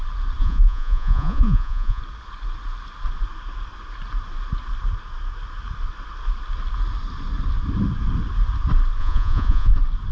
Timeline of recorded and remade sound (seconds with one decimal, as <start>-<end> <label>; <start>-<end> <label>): 0.0-0.4 recorded; 0.4-2.0 remade; 2.0-9.0 recorded; 9.0-9.7 remade; 9.7-10.1 recorded

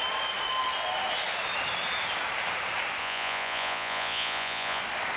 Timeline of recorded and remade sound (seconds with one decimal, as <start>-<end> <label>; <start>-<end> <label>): 0.0-3.0 recorded; 3.0-4.8 remade; 4.8-5.2 recorded